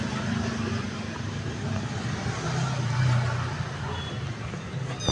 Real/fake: real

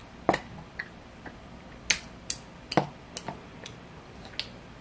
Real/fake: real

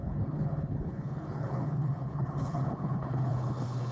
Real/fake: fake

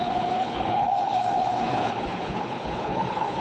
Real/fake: fake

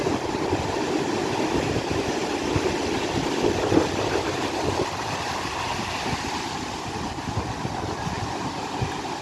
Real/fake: real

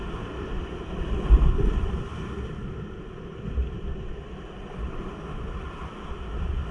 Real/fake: real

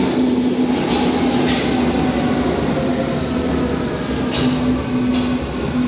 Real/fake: real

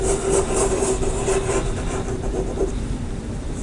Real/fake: real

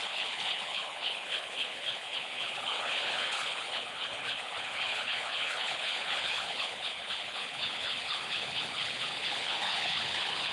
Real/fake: fake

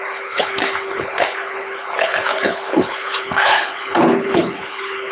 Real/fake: fake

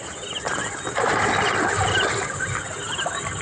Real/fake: real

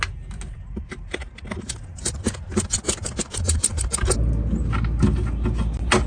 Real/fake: real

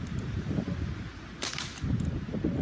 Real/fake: real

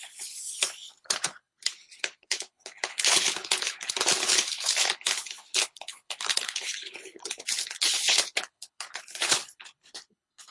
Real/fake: fake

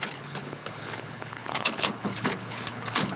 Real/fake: fake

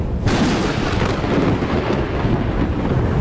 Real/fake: real